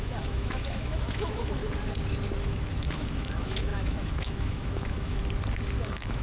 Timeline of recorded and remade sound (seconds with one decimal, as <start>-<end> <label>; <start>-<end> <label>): 0.0-1.6 remade; 1.6-2.4 recorded; 2.4-5.2 remade; 5.2-5.8 recorded; 5.8-6.2 remade